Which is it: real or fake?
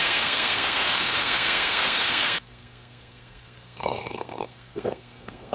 fake